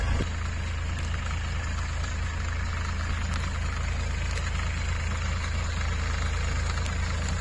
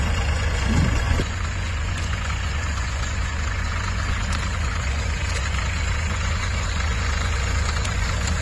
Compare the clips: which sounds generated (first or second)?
second